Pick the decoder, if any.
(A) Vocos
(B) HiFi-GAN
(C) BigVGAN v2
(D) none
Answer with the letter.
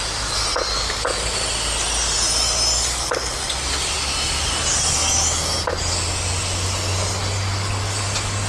D